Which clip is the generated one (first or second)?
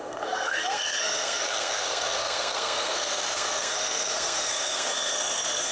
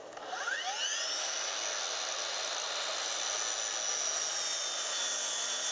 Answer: first